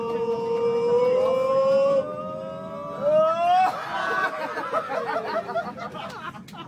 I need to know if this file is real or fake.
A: real